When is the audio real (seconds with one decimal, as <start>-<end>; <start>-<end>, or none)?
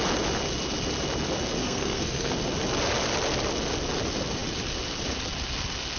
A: 0.0-1.6; 2.3-6.0